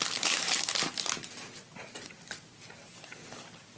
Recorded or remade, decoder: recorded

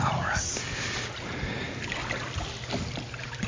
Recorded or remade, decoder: recorded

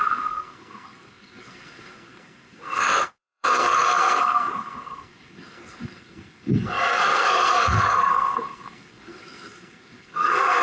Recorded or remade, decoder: remade, codec, SNAC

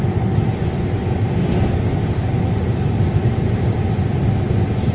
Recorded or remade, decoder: recorded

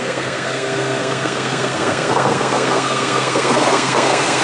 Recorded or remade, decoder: remade, codec, SNAC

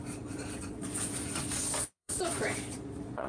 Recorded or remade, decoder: remade, vocoder, Vocos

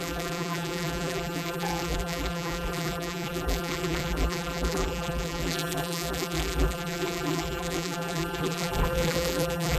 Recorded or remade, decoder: remade, vocoder, BigVGAN v2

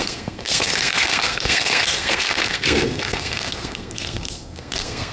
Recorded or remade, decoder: remade, codec, SNAC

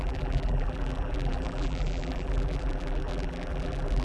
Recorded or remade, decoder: remade, vocoder, BigVGAN v2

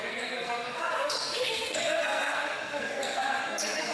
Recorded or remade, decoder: remade, codec, SNAC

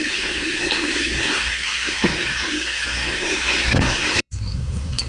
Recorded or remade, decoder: remade, codec, SNAC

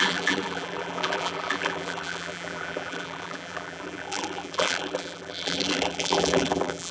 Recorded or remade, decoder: remade, vocoder, BigVGAN v2